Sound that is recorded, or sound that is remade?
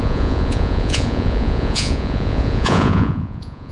remade